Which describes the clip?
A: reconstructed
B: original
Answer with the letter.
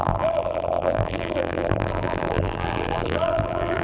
A